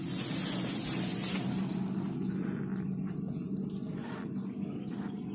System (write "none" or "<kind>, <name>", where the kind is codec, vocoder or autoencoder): none